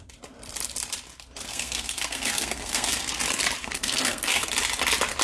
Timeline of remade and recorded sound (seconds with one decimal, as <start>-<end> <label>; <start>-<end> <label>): 0.0-1.5 recorded; 1.5-3.2 remade; 3.2-3.6 recorded; 3.6-4.5 remade; 4.5-5.2 recorded